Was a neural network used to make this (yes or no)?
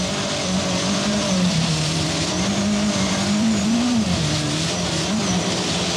yes